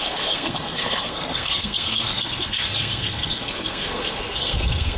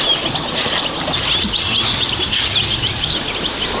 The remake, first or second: first